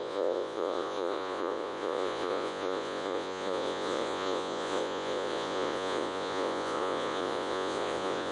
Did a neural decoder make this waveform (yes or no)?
yes